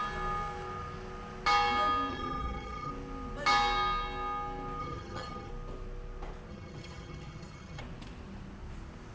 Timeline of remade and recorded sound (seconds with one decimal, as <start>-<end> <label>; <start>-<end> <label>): 0.0-2.1 recorded; 2.1-2.9 remade; 2.9-4.8 recorded; 4.8-5.5 remade; 5.5-6.5 recorded; 6.5-7.8 remade; 7.8-9.1 recorded